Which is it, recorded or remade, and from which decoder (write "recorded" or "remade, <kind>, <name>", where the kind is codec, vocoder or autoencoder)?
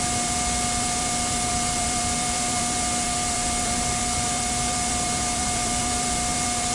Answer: remade, vocoder, BigVGAN v2